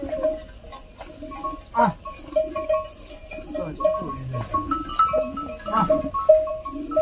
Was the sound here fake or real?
real